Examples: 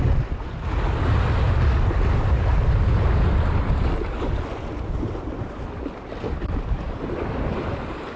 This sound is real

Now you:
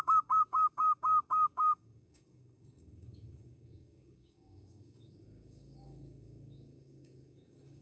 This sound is fake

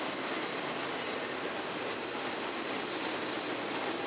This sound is real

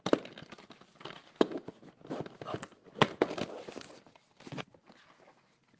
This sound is real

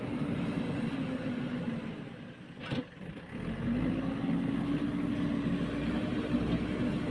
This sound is real